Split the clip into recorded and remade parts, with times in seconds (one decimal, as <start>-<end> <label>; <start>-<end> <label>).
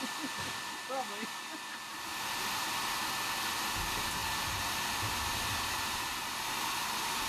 0.0-7.3 recorded